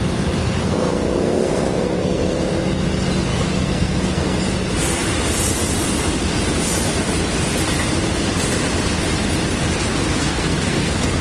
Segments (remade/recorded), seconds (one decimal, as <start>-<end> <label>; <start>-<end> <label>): 0.0-0.4 recorded; 0.4-2.4 remade; 2.4-3.3 recorded; 3.3-4.4 remade; 4.4-10.2 recorded; 10.2-11.2 remade